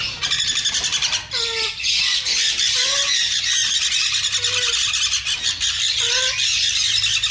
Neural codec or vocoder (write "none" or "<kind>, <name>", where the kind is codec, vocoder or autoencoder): none